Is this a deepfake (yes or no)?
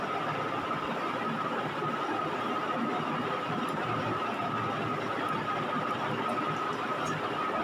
no